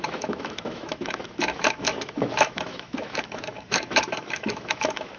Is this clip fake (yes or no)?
yes